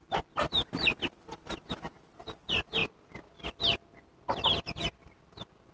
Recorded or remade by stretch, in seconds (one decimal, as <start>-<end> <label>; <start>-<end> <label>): 0.0-5.7 recorded